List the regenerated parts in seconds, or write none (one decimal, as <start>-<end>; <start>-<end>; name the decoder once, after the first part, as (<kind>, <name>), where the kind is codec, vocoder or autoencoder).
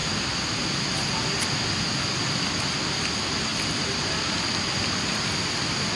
none